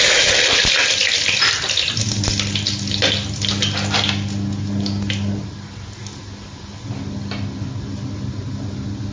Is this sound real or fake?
real